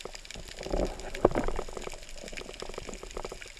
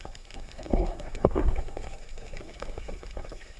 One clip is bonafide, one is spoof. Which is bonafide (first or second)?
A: first